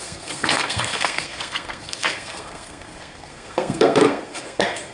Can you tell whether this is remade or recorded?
remade